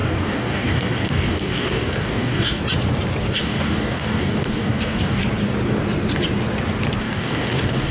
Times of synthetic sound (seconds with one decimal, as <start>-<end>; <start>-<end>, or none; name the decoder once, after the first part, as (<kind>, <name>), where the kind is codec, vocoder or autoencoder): 0.0-2.6 (codec, DAC); 3.2-5.2; 7.0-7.9